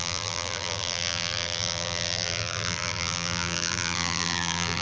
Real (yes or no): no